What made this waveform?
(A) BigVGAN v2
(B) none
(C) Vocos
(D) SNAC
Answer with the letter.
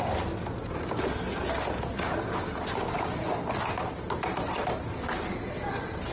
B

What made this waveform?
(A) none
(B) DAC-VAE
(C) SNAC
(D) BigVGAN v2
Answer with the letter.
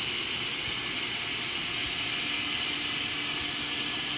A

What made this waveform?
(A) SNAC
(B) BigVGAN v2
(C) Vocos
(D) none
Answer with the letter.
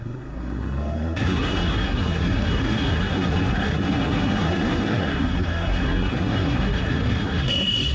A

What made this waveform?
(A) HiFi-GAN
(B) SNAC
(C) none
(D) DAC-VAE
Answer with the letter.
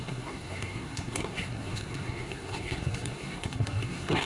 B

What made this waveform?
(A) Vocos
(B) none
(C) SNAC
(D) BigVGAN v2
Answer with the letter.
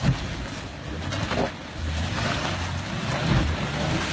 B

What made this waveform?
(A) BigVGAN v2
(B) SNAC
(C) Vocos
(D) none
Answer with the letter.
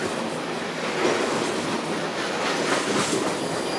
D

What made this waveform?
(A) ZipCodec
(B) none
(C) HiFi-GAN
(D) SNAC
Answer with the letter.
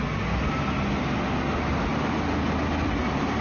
B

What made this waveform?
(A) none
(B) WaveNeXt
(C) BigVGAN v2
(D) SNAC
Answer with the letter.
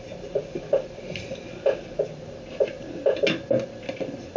A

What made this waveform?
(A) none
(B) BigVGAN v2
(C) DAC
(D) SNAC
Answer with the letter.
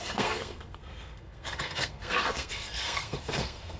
D